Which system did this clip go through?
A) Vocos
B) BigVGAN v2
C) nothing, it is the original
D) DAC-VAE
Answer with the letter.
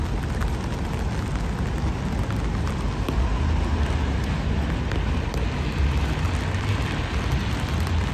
C